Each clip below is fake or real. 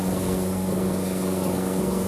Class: fake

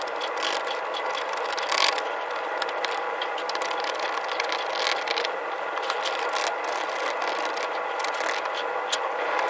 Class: real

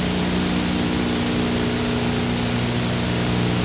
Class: real